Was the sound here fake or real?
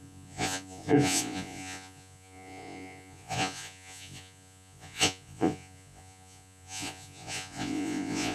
fake